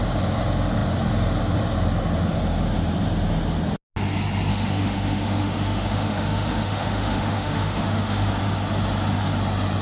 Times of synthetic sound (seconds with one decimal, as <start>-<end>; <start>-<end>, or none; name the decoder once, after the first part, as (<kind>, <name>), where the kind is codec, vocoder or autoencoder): 4.5-8.3 (autoencoder, DAC-VAE)